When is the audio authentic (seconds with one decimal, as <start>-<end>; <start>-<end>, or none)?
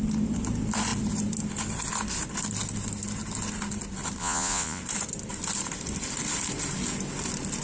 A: 0.0-4.2; 4.8-7.6